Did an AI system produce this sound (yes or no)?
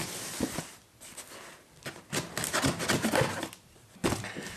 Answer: no